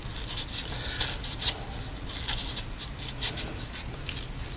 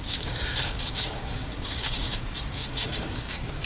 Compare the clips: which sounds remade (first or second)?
second